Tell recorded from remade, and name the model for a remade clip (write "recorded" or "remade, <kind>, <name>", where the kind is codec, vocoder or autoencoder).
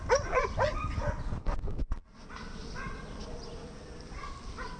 recorded